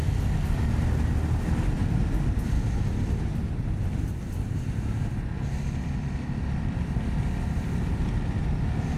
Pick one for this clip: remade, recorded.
recorded